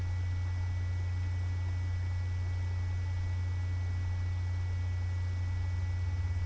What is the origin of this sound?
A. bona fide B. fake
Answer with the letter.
A